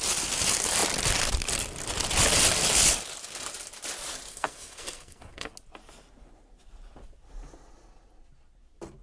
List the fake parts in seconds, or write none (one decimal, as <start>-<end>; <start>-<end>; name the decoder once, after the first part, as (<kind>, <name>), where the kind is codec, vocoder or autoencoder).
4.3-5.5 (codec, SNAC)